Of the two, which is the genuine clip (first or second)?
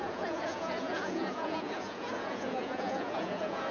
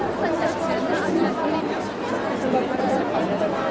second